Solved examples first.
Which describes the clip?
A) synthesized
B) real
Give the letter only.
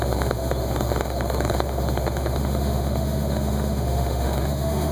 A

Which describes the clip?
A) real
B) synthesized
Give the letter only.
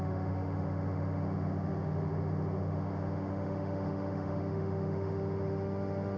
B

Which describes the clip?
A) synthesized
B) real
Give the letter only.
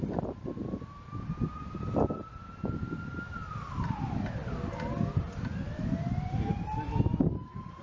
B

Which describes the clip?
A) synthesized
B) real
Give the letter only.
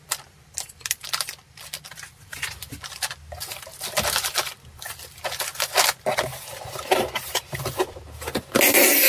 B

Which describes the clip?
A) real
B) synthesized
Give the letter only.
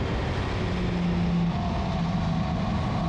A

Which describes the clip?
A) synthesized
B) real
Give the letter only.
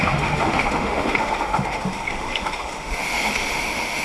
A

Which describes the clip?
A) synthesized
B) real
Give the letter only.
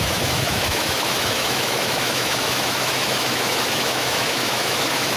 A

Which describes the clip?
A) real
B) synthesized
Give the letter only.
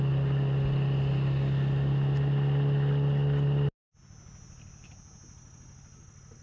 A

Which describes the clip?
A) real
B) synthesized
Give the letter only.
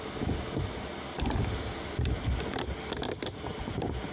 A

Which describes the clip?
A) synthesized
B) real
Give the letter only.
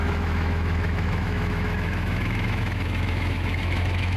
A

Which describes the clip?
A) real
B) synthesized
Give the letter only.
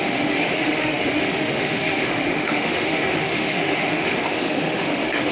B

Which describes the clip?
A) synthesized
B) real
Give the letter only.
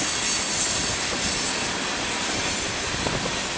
B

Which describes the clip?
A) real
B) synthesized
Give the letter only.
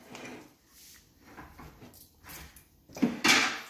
A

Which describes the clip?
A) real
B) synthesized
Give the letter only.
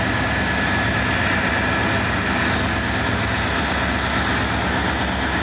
A